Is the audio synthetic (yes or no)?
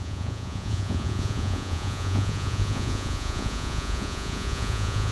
yes